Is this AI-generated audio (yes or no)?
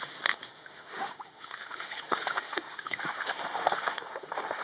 yes